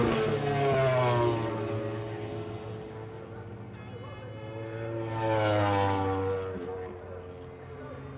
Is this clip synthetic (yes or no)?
no